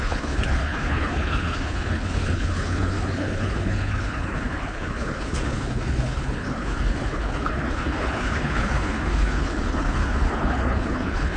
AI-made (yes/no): yes